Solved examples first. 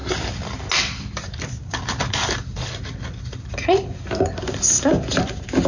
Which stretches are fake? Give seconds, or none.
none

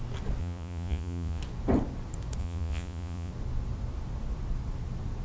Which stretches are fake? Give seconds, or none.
0.4-1.4 (vocoder, Vocos); 2.4-3.3

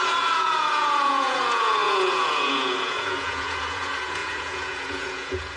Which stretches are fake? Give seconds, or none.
0.0-5.6 (vocoder, Vocos)

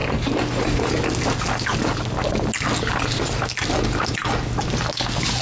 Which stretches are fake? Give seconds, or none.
none